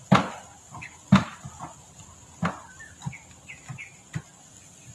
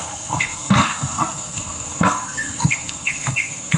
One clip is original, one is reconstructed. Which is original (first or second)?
first